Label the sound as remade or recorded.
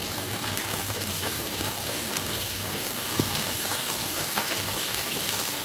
remade